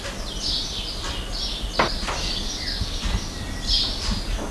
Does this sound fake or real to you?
real